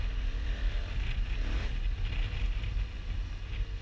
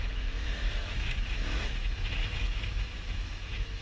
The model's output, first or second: second